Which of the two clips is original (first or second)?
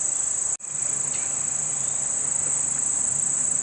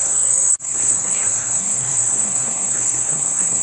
first